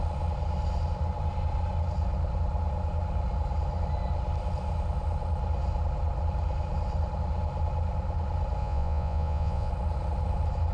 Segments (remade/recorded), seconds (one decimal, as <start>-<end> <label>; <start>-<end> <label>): 0.0-8.6 recorded; 8.6-9.7 remade; 9.7-10.7 recorded